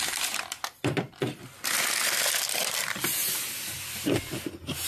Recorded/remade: recorded